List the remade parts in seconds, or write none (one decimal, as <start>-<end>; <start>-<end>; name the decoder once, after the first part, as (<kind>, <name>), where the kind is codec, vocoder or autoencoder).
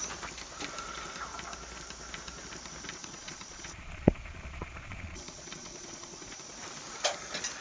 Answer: 3.0-6.4 (vocoder, Vocos)